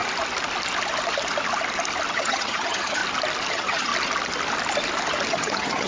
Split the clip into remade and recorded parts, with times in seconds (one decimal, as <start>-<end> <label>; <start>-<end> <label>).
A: 0.0-2.1 recorded; 2.1-3.0 remade; 3.0-3.5 recorded; 3.5-3.9 remade; 3.9-5.3 recorded; 5.3-5.9 remade